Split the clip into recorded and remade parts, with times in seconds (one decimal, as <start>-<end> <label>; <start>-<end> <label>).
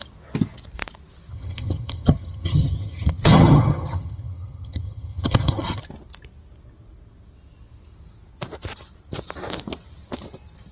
0.0-1.3 recorded; 1.3-5.8 remade; 5.8-10.7 recorded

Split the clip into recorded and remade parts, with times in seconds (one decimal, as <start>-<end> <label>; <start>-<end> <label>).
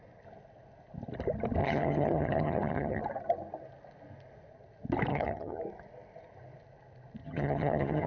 0.0-1.6 recorded; 1.6-3.0 remade; 3.0-5.1 recorded; 5.1-5.6 remade; 5.6-7.2 recorded; 7.2-8.1 remade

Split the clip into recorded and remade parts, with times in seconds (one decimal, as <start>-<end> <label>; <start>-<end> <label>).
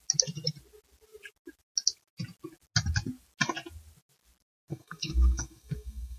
0.0-4.7 recorded; 4.7-6.2 remade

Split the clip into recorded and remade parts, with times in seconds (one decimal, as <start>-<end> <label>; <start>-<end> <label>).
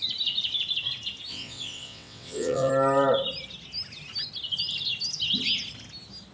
0.0-1.3 recorded; 1.3-2.7 remade; 2.7-6.3 recorded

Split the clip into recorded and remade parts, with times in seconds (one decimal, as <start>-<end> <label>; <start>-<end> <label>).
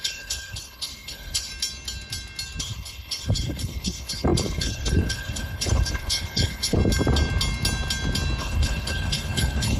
0.0-1.5 remade; 1.5-2.6 recorded; 2.6-6.8 remade; 6.8-8.4 recorded; 8.4-9.8 remade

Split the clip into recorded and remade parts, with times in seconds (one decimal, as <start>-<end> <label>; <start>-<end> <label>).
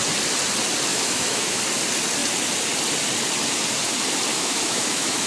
0.0-0.9 recorded; 0.9-1.6 remade; 1.6-4.3 recorded; 4.3-5.3 remade